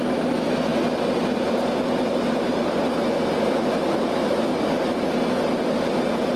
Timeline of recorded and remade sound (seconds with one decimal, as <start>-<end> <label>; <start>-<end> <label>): 0.0-6.4 recorded